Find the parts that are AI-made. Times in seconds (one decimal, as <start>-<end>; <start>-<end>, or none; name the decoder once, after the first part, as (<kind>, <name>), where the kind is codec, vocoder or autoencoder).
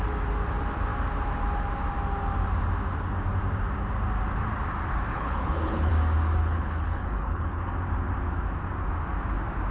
5.1-5.9 (codec, HILCodec); 6.4-7.6